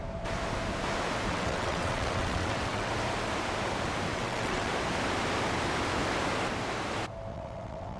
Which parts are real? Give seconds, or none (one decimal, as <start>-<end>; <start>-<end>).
0.0-1.3; 2.9-4.1; 4.7-7.3